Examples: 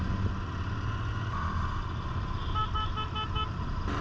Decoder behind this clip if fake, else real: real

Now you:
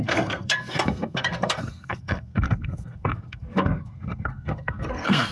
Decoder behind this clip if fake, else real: fake, codec, SNAC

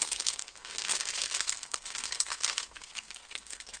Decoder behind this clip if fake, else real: fake, codec, SNAC